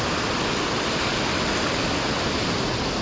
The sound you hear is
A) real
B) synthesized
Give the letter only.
A